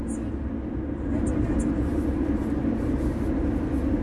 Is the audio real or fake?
real